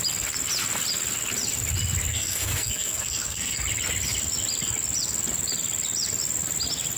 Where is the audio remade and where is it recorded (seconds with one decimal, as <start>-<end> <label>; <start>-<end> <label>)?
0.0-2.1 recorded; 2.1-3.6 remade; 3.6-7.0 recorded